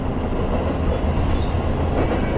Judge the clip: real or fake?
real